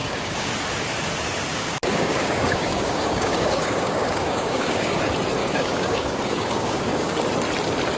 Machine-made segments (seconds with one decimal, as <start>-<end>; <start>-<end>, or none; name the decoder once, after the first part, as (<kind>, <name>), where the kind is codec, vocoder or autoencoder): 0.0-0.5 (codec, DAC); 1.5-5.0; 5.4-7.2

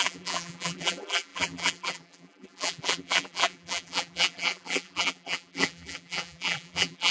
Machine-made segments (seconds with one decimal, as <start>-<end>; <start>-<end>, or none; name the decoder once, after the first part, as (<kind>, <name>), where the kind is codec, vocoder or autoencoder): 0.0-7.1 (vocoder, BigVGAN v2)

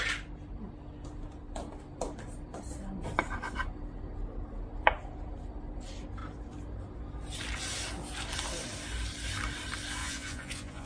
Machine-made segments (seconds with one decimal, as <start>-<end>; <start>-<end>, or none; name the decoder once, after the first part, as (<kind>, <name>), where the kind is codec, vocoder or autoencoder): 10.0-10.9 (vocoder, Vocos)

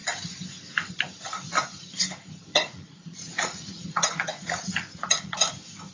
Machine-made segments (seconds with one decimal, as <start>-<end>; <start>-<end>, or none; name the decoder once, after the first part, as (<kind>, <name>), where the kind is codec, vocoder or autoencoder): 2.5-5.5 (vocoder, Vocos)